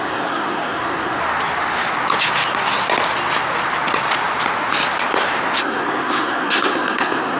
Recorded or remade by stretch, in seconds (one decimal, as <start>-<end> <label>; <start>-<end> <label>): 0.0-1.2 remade; 1.2-5.6 recorded; 5.6-7.4 remade